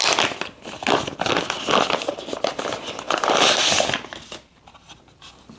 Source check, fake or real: real